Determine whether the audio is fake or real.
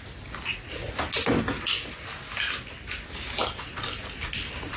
real